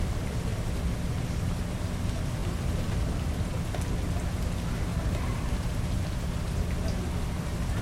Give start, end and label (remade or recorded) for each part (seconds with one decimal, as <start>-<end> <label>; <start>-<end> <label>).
0.0-2.4 recorded; 2.4-3.0 remade; 3.0-4.9 recorded; 4.9-6.0 remade; 6.0-7.8 recorded